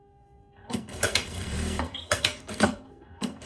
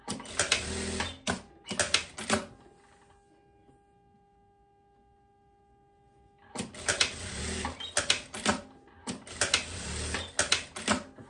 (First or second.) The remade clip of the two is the first